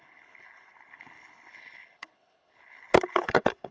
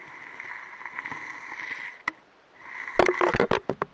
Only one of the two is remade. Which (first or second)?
first